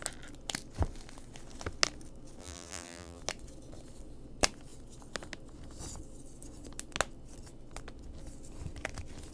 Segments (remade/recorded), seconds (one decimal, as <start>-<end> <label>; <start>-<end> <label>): 0.0-2.4 recorded; 2.4-3.2 remade; 3.2-9.3 recorded

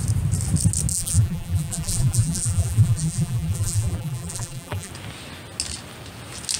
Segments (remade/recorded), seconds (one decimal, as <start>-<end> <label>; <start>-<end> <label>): 0.0-0.9 recorded; 0.9-4.9 remade; 4.9-6.6 recorded

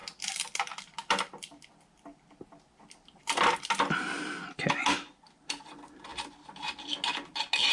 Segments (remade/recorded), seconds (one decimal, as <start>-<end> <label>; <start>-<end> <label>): 0.0-7.7 recorded

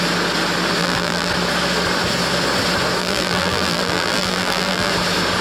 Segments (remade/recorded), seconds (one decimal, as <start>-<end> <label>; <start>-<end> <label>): 0.0-0.8 recorded; 0.8-1.3 remade; 1.3-3.0 recorded; 3.0-4.9 remade; 4.9-5.4 recorded

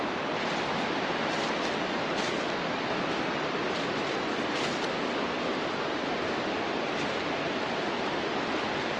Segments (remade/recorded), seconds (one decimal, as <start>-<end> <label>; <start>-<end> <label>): 0.0-3.6 recorded; 3.6-4.8 remade; 4.8-5.5 recorded; 5.5-6.5 remade; 6.5-9.0 recorded

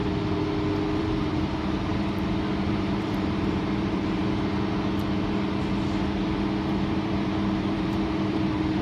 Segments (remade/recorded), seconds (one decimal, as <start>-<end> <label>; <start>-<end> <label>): 0.0-1.0 recorded; 1.0-1.9 remade; 1.9-2.7 recorded; 2.7-4.2 remade; 4.2-6.7 recorded; 6.7-8.8 remade

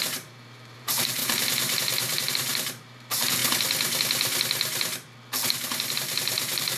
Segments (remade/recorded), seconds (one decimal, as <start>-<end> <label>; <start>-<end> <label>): 0.0-3.4 remade; 3.4-5.9 recorded; 5.9-6.8 remade

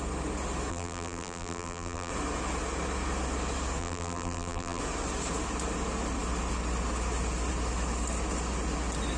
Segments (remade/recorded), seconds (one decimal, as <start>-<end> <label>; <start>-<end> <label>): 0.0-0.7 recorded; 0.7-2.1 remade; 2.1-3.8 recorded; 3.8-4.8 remade; 4.8-9.2 recorded